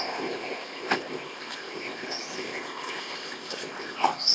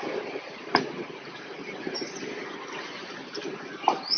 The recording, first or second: second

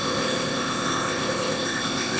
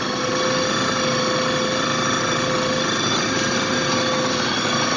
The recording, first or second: second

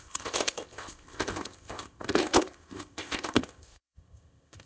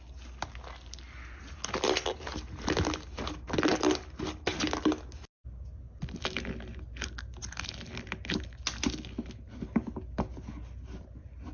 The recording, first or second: second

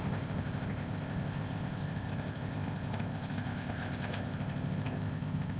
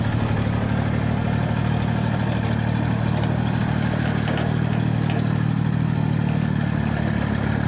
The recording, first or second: second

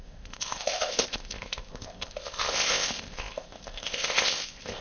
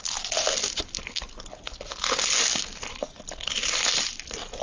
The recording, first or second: second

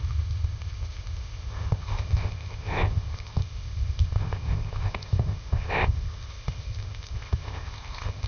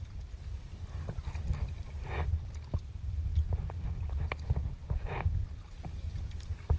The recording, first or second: second